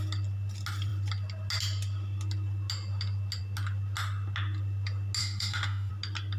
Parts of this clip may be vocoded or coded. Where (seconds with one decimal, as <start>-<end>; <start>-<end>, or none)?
5.2-5.9